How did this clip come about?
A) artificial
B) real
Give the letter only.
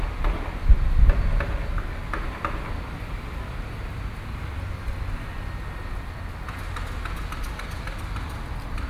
B